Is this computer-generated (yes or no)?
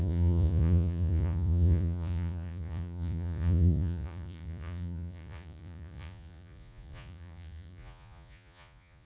yes